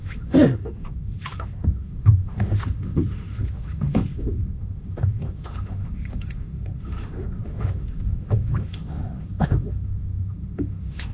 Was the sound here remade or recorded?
remade